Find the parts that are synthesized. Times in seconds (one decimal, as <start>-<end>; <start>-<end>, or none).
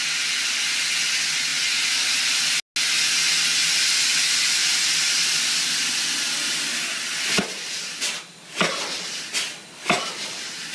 none